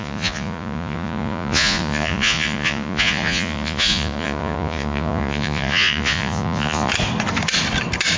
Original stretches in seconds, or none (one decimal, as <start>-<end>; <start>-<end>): 6.9-8.2

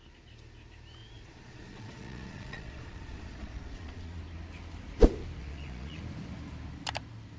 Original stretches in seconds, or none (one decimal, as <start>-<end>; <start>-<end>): 0.0-1.0; 4.2-5.4; 6.0-7.4

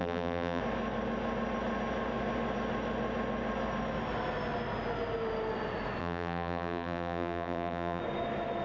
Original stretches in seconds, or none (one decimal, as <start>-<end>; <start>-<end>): 0.6-6.0; 8.0-8.6